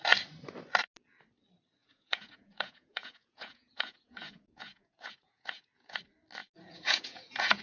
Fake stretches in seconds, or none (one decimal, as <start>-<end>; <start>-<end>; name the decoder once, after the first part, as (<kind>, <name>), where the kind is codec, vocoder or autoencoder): 1.8-6.0 (vocoder, Vocos); 6.4-7.6